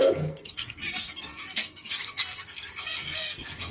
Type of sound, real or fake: fake